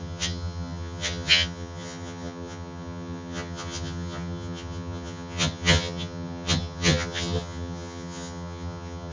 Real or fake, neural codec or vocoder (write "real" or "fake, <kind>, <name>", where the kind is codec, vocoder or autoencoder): fake, vocoder, HiFi-GAN